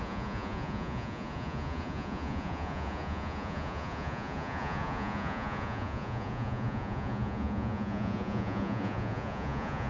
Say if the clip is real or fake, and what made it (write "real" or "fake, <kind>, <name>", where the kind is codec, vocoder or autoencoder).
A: fake, vocoder, Vocos